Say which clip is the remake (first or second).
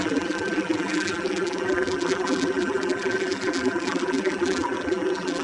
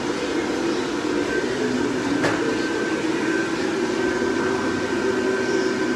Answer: first